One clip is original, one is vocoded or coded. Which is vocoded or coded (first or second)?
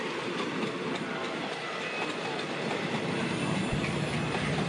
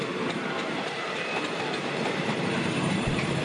second